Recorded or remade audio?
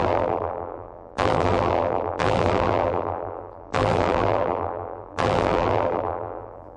remade